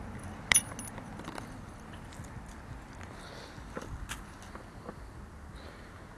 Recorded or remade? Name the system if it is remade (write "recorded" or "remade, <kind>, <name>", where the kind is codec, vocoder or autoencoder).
recorded